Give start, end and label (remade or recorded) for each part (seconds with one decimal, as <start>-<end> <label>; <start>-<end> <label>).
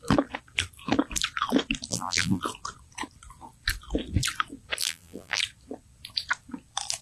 0.0-1.9 recorded; 1.9-2.4 remade; 2.4-4.8 recorded; 4.8-5.4 remade; 5.4-7.0 recorded